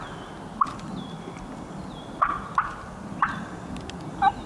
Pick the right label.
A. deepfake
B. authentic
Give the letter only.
B